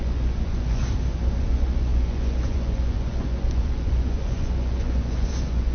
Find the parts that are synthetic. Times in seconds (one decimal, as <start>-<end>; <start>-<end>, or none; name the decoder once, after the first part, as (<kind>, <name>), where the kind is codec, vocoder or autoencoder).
0.0-0.8 (vocoder, Vocos); 1.4-5.7

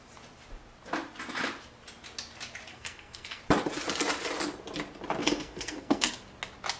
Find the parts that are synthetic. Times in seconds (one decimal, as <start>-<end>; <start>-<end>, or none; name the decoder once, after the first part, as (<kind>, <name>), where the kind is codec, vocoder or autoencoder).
2.7-3.4 (codec, SNAC); 5.2-6.1